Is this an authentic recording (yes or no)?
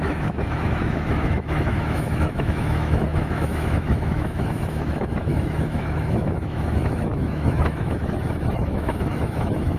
no